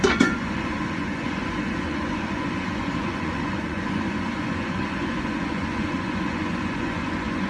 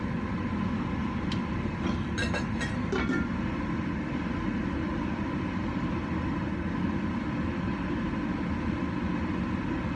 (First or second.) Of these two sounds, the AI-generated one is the first